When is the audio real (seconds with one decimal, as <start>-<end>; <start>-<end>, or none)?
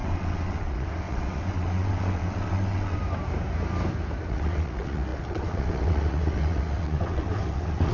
3.0-4.2